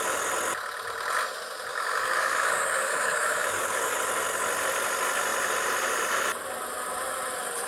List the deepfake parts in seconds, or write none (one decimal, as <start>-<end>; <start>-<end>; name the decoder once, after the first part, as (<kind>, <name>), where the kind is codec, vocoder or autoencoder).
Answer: 1.7-4.0 (codec, DAC)